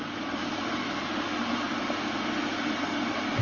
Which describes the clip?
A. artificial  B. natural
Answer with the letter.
B